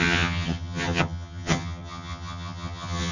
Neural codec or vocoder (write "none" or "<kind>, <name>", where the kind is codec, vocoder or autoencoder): vocoder, HiFi-GAN